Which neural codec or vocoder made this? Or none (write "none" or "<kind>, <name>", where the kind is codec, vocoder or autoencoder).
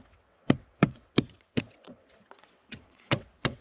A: vocoder, WaveNeXt